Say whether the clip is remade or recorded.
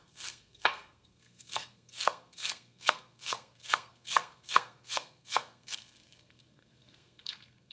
remade